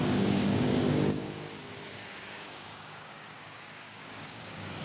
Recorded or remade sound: remade